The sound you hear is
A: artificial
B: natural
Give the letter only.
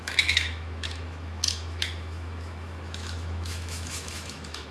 A